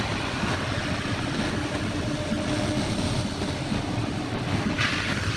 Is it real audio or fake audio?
real